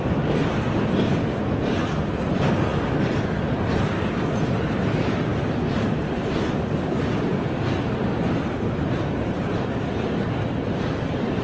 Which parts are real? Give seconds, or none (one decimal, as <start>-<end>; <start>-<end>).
0.0-11.4